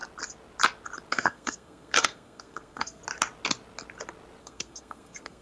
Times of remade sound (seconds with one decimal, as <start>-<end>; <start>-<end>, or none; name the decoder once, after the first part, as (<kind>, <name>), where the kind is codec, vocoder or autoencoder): 1.1-3.0 (codec, SNAC); 4.4-5.4